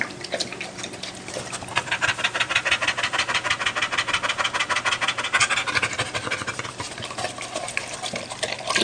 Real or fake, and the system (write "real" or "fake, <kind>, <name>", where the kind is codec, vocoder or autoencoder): real